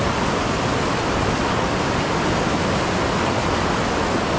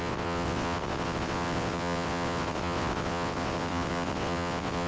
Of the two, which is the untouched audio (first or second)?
first